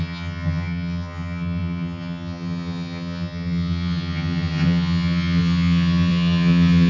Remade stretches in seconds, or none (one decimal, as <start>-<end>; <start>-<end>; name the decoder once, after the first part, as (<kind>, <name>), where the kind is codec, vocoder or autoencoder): 0.0-6.9 (vocoder, HiFi-GAN)